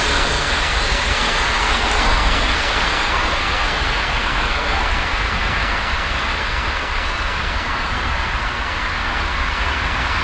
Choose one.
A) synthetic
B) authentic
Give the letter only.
A